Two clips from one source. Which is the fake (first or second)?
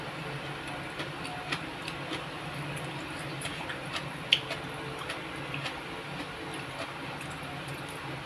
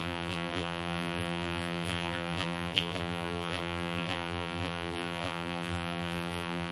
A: second